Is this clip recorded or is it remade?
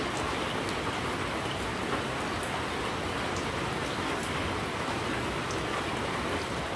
recorded